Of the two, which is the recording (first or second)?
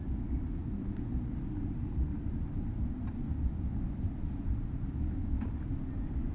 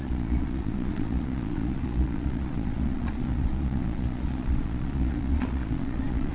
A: first